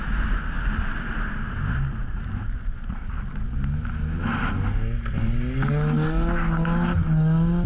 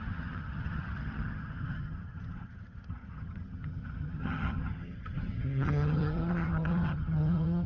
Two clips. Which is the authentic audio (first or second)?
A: first